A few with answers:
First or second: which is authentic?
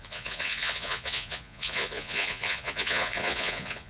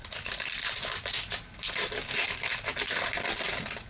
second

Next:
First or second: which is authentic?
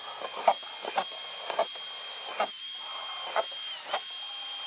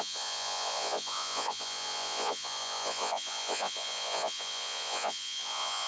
first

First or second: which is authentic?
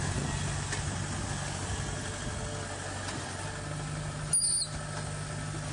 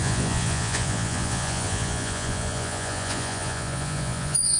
first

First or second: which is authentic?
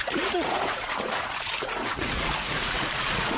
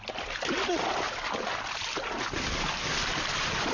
second